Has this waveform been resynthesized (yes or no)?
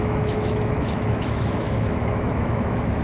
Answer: yes